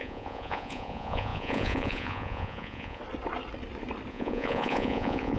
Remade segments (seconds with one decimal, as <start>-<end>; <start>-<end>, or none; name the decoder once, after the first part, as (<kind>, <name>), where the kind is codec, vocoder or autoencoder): 0.0-3.0 (vocoder, Vocos); 4.1-5.4